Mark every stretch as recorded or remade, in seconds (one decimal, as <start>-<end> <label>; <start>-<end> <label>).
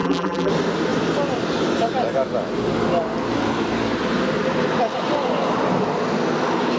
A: 0.0-0.5 remade; 0.5-6.8 recorded